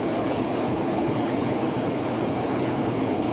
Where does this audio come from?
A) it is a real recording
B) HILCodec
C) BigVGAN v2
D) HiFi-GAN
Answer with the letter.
B